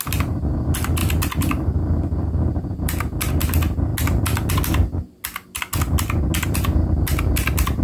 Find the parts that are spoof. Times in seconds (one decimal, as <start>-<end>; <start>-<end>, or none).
none